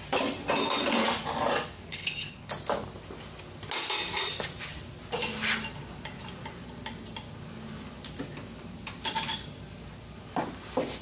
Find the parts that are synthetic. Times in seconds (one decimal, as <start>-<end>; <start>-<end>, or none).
1.9-2.5

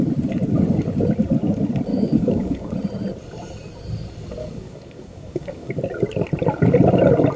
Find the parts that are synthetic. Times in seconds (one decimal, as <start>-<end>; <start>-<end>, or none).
1.9-2.7; 4.4-5.7

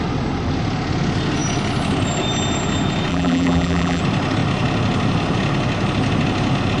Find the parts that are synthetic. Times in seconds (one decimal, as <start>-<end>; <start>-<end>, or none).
3.1-4.0

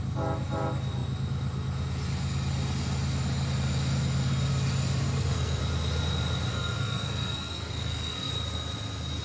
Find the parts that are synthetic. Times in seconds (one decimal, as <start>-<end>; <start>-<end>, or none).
5.0-5.6; 6.5-8.3